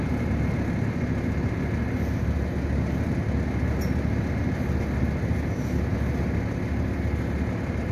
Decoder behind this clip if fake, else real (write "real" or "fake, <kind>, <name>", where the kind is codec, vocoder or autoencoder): real